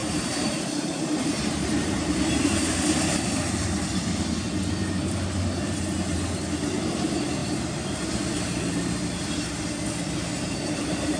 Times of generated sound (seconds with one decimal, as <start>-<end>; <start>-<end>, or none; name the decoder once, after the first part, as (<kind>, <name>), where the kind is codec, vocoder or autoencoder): 0.0-2.7 (vocoder, BigVGAN v2); 7.4-9.5